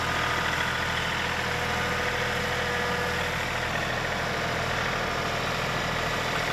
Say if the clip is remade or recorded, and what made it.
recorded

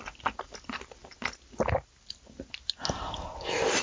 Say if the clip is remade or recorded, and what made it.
recorded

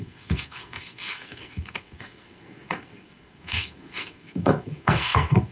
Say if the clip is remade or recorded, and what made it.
remade, codec, SNAC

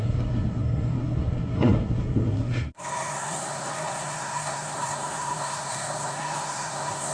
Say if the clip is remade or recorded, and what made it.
remade, codec, SNAC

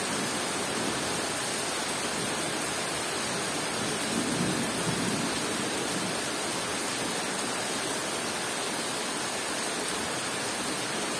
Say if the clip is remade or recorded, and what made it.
recorded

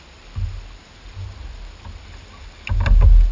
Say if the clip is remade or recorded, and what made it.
recorded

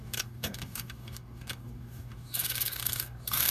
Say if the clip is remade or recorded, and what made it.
remade, codec, DAC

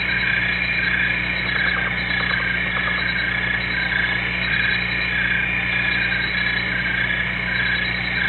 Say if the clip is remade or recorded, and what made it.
recorded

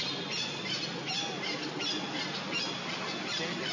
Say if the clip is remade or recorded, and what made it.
recorded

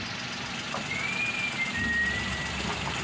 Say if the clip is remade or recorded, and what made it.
recorded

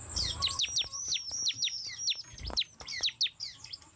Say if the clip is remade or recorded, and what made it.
recorded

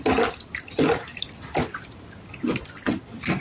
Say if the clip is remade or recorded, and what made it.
recorded